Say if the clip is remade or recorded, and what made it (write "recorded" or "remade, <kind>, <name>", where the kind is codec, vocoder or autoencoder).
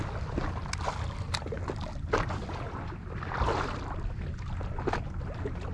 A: recorded